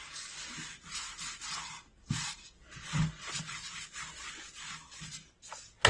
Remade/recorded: recorded